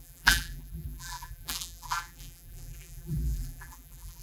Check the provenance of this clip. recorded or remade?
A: remade